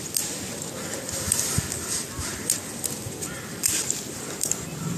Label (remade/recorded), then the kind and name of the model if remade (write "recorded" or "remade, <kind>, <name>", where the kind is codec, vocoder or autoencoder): recorded